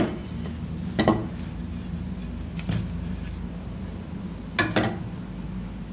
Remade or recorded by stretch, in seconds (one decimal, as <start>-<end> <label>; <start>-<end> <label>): 0.0-5.9 recorded